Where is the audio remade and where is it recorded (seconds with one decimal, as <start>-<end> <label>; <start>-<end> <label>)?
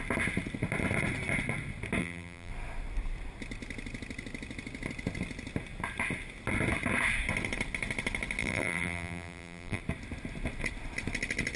0.0-2.0 recorded; 2.0-2.5 remade; 2.5-8.4 recorded; 8.4-9.8 remade; 9.8-11.6 recorded